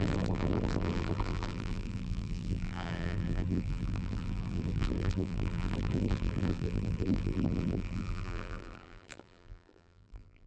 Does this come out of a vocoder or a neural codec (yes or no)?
yes